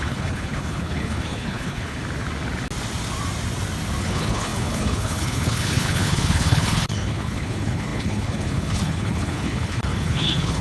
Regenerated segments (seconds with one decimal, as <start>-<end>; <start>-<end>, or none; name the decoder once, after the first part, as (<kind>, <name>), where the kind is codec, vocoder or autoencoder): 0.0-2.0 (codec, HILCodec); 4.0-10.6